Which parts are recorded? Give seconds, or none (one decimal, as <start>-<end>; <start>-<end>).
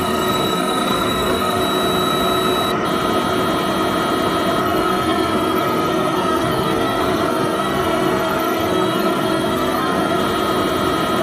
1.6-4.6; 10.2-11.2